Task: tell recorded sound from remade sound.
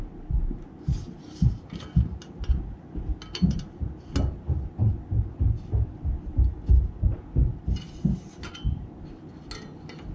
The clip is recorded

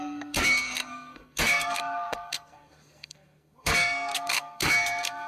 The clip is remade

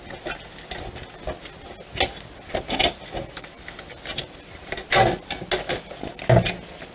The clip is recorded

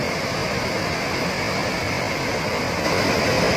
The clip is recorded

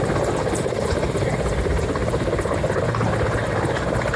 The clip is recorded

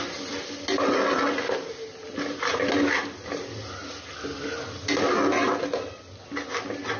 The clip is recorded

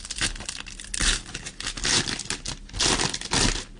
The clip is recorded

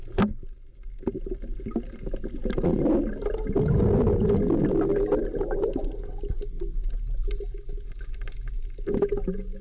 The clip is recorded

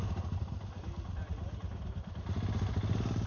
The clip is recorded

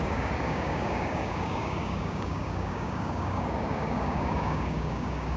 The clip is remade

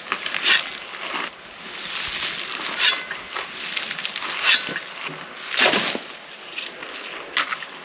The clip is recorded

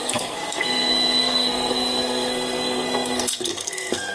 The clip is remade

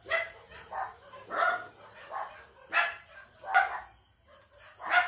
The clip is recorded